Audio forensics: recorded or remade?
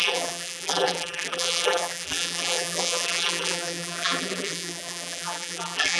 remade